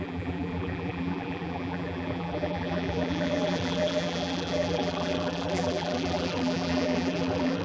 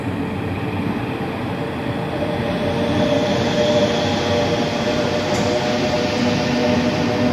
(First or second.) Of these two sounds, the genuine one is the second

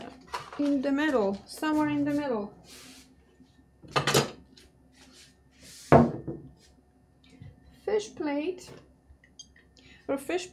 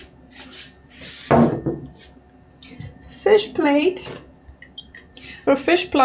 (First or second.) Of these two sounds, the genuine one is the first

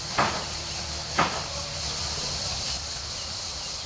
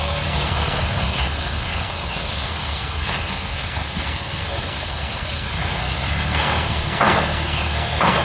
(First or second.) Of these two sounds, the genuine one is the first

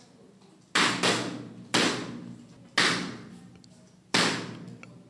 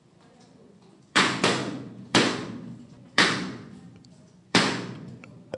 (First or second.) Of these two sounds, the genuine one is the first